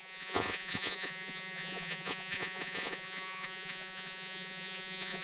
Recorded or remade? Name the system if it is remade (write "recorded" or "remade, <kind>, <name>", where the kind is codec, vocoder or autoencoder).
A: remade, vocoder, Vocos